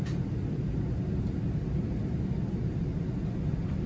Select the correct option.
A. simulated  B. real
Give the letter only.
B